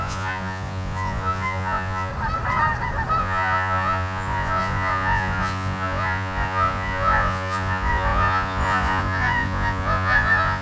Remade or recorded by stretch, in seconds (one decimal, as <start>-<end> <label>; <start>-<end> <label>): 0.0-2.1 remade; 2.1-3.2 recorded; 3.2-10.6 remade